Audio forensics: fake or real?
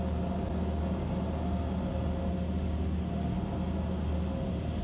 real